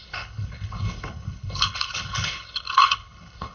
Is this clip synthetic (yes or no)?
yes